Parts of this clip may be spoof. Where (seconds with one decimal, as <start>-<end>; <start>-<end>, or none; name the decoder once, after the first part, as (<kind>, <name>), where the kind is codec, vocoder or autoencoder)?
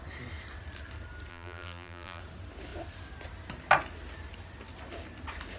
1.3-2.2 (vocoder, BigVGAN v2)